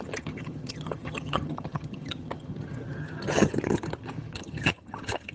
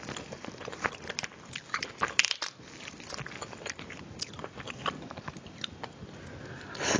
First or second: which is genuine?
second